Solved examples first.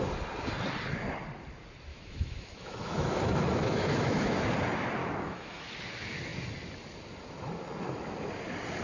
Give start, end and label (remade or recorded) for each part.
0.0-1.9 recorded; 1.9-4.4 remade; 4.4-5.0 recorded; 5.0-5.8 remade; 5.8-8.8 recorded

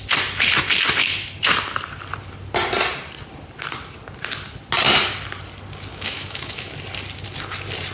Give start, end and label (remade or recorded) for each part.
0.0-5.9 recorded; 5.9-6.7 remade; 6.7-7.9 recorded

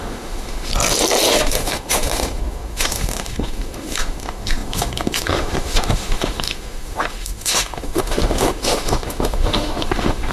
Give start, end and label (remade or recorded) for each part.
0.0-0.7 remade; 0.7-1.3 recorded; 1.3-10.3 remade

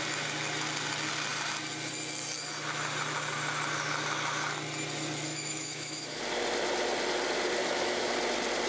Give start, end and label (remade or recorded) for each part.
0.0-5.3 recorded; 5.3-6.2 remade; 6.2-7.6 recorded; 7.6-8.1 remade; 8.1-8.7 recorded

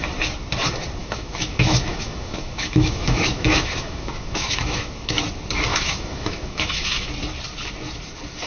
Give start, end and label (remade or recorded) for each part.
0.0-1.0 recorded; 1.0-5.2 remade; 5.2-5.7 recorded; 5.7-7.1 remade; 7.1-8.5 recorded

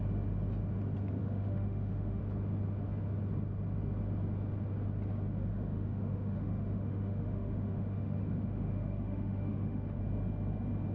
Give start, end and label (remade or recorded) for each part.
0.0-1.2 recorded; 1.2-2.2 remade; 2.2-5.5 recorded; 5.5-10.0 remade; 10.0-10.9 recorded